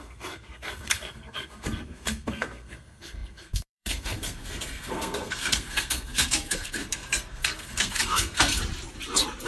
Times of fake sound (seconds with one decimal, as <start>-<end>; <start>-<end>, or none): 0.0-8.6